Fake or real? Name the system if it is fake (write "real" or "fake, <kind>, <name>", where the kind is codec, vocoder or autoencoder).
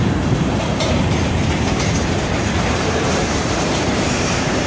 fake, vocoder, BigVGAN v2